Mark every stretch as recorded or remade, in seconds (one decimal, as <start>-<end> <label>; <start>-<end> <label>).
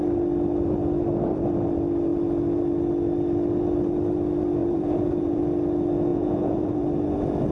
0.0-4.6 recorded; 4.6-5.4 remade; 5.4-6.1 recorded; 6.1-6.8 remade; 6.8-7.5 recorded